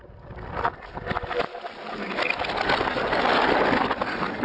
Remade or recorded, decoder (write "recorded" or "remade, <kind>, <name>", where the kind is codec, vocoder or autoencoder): recorded